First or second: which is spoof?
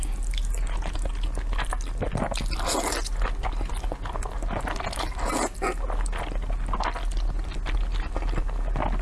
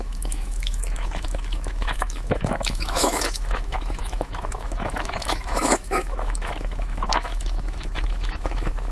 second